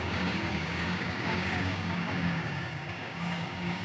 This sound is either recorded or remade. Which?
remade